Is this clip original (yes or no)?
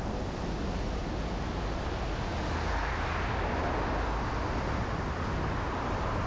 yes